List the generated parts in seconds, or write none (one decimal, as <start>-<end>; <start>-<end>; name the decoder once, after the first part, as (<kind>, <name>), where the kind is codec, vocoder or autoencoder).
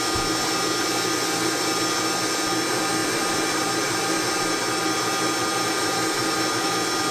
3.0-4.2 (vocoder, BigVGAN v2); 5.5-6.2